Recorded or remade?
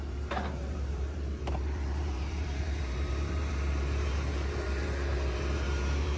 remade